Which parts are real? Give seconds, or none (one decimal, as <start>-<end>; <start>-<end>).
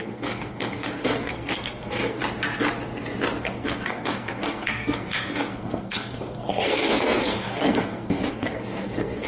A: 2.2-3.4